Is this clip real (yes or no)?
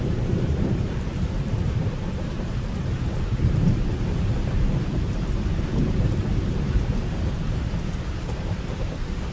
no